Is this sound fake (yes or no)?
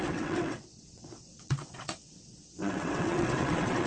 yes